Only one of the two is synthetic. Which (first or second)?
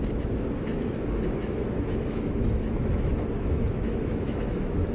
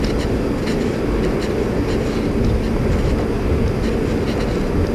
first